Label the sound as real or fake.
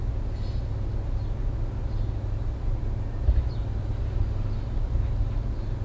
real